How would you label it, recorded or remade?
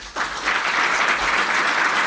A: recorded